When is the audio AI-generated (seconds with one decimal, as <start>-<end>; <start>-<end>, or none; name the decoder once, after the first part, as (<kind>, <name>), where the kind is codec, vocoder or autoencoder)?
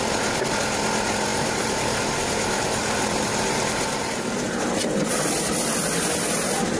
1.3-5.3 (vocoder, BigVGAN v2)